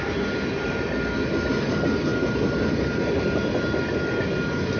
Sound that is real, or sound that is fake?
real